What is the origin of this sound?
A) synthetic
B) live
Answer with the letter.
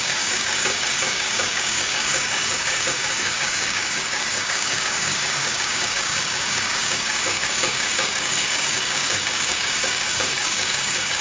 A